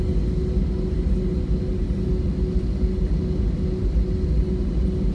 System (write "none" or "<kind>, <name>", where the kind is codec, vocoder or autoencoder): none